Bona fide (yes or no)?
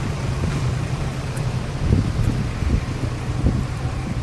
yes